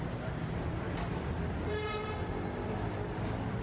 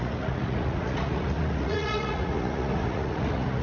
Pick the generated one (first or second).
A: second